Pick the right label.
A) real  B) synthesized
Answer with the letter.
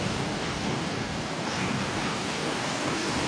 B